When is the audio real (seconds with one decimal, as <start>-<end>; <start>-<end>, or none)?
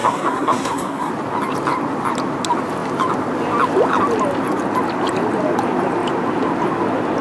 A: 1.1-7.2